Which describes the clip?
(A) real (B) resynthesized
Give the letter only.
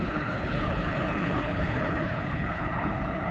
B